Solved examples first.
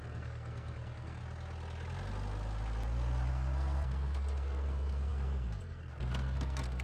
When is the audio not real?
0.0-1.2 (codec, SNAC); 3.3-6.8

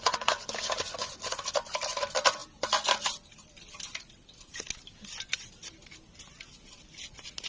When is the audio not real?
none

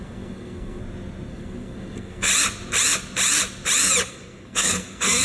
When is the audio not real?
0.0-0.8 (codec, SNAC); 1.3-2.3; 4.1-5.2

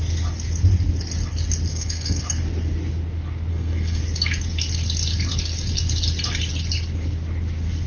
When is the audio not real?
1.7-2.2 (codec, SNAC); 3.5-4.0